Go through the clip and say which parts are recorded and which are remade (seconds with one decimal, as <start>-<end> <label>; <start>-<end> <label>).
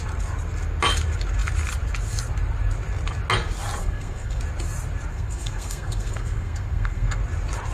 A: 0.0-3.8 recorded; 3.8-4.4 remade; 4.4-5.1 recorded; 5.1-7.2 remade; 7.2-7.7 recorded